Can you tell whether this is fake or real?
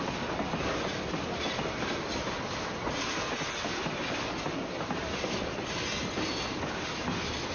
real